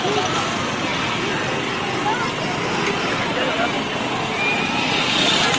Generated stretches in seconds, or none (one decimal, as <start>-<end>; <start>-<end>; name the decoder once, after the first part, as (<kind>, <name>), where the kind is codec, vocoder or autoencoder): none